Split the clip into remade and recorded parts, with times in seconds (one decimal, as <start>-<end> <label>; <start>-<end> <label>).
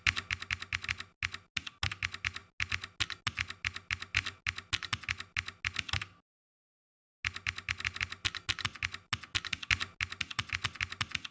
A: 0.0-11.3 recorded